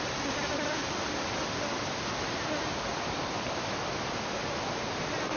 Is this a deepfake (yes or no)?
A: no